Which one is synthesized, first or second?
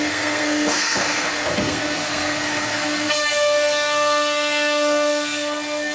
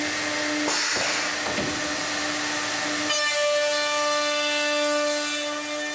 first